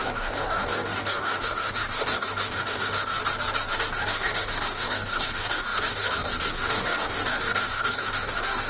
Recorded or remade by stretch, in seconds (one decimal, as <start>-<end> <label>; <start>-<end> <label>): 0.0-3.2 remade; 3.2-3.7 recorded; 3.7-8.7 remade